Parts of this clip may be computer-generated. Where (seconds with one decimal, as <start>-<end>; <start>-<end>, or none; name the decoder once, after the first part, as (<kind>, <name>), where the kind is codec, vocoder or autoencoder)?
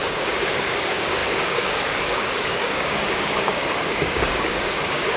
0.0-5.2 (codec, DAC)